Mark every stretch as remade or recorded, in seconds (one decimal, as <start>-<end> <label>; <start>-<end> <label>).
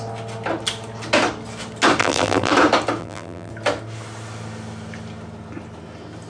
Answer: 0.0-2.0 recorded; 2.0-2.5 remade; 2.5-3.0 recorded; 3.0-3.5 remade; 3.5-6.3 recorded